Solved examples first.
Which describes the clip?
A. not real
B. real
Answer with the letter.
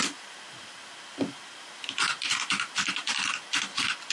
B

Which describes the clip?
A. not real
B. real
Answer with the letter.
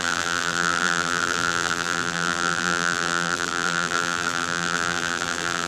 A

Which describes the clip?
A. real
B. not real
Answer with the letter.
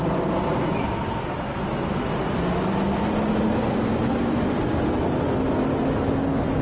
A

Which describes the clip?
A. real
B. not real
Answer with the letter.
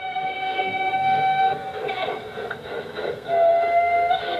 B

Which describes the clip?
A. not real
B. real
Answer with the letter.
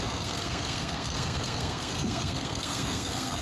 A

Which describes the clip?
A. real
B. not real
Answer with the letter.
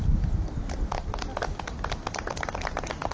A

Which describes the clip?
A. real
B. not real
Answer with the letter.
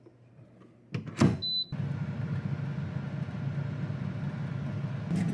A